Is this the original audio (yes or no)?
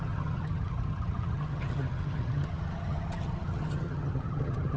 no